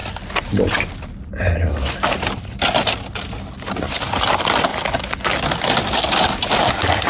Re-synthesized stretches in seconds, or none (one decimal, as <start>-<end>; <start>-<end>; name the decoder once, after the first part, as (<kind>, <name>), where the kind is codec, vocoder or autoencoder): 3.7-4.7 (vocoder, BigVGAN v2); 6.5-7.1